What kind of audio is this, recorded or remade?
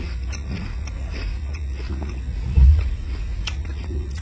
remade